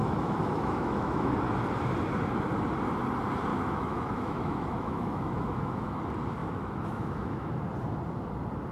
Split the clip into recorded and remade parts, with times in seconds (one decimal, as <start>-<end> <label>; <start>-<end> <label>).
0.0-1.3 remade; 1.3-3.5 recorded; 3.5-6.0 remade; 6.0-6.4 recorded; 6.4-7.5 remade; 7.5-8.7 recorded